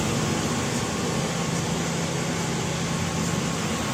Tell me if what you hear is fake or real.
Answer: real